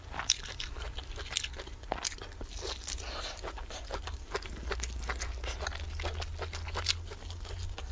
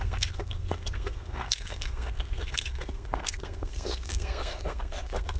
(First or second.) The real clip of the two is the first